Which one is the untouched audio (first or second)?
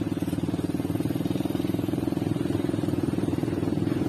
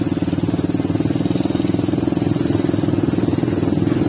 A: second